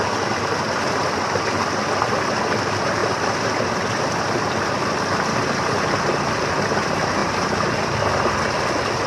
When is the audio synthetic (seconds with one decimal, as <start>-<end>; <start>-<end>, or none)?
3.0-4.0; 7.2-8.0